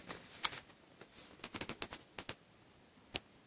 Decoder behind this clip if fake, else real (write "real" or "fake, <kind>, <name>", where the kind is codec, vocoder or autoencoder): real